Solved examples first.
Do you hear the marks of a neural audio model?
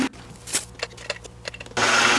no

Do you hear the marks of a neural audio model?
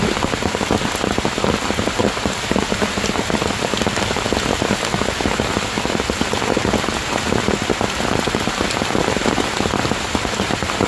no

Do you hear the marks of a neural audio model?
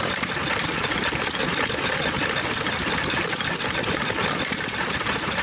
no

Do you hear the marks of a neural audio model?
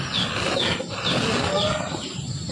no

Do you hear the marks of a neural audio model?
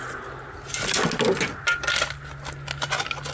no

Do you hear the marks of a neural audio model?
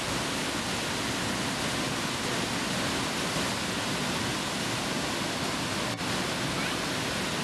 no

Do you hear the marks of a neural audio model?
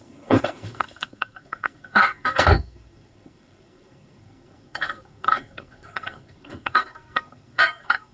yes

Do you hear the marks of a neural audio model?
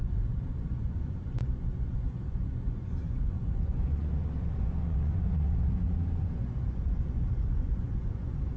yes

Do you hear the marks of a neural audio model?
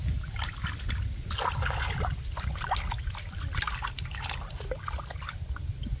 no